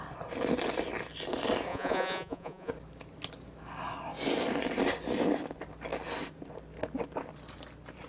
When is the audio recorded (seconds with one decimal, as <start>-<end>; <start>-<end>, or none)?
0.0-1.7; 2.7-8.1